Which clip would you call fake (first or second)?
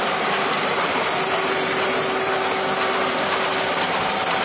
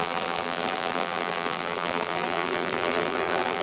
second